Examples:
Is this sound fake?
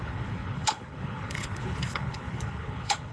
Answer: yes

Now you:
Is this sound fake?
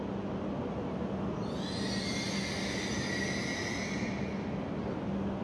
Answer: no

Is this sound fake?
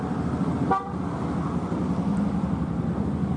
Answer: no